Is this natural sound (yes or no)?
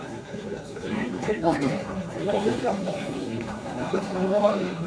no